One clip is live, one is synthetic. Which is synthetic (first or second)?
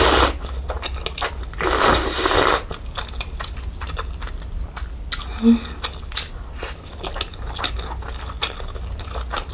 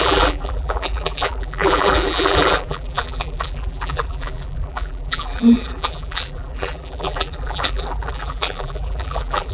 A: second